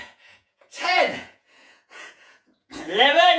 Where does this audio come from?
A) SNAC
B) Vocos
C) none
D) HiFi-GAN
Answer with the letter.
B